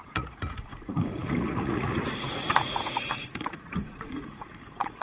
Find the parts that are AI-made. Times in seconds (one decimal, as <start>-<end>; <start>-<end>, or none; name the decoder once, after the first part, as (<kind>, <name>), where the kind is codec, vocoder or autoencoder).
0.0-5.0 (vocoder, Vocos)